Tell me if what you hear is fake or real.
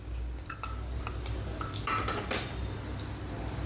real